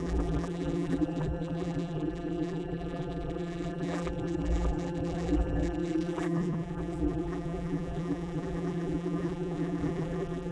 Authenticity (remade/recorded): remade